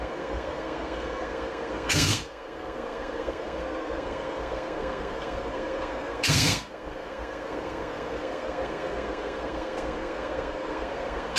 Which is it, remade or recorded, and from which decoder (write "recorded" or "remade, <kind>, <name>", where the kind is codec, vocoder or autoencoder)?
remade, codec, SNAC